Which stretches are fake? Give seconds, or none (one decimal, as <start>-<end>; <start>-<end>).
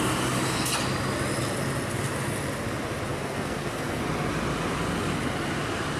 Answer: 3.1-4.0